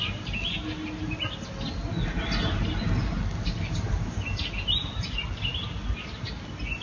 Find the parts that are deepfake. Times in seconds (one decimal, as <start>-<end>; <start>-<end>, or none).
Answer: none